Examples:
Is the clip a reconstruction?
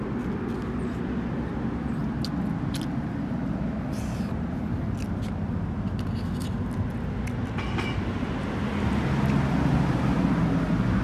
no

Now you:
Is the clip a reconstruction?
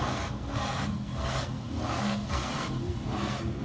yes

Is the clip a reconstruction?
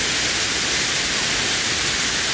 no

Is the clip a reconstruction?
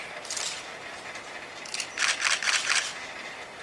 no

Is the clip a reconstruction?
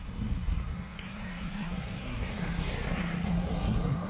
yes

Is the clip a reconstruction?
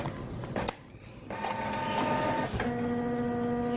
no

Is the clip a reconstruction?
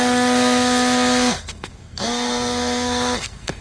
yes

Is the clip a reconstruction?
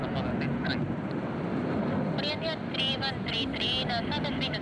no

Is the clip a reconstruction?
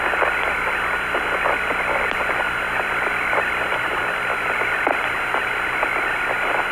no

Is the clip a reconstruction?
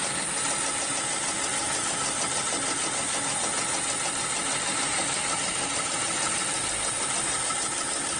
no